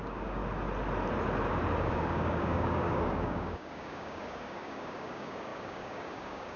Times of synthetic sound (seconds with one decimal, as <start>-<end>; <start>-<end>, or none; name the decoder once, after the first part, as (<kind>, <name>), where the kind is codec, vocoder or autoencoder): 0.0-0.4 (codec, DAC); 1.8-6.6